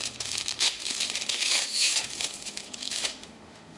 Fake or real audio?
fake